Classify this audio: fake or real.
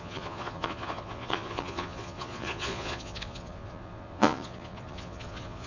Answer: fake